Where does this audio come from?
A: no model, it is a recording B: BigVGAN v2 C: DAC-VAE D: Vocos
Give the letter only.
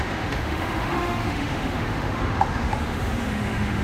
C